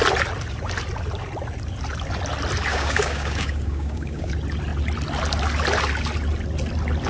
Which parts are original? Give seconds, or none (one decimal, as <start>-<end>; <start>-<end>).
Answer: 0.0-2.7; 4.3-7.1